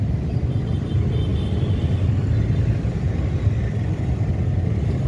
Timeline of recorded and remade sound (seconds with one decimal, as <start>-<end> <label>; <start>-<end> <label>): 0.0-5.1 recorded